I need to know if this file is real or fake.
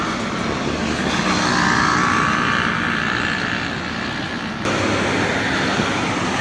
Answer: real